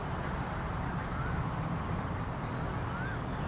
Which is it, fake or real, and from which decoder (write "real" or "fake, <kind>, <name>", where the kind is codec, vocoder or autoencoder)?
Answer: fake, vocoder, BigVGAN v2